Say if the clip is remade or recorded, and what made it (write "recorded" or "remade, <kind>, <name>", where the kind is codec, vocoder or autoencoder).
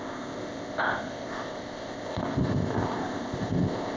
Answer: remade, codec, ZipCodec